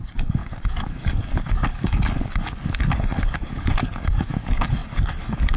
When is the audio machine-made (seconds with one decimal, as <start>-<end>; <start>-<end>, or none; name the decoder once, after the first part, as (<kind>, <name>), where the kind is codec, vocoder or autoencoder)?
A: 0.0-5.6 (codec, DAC)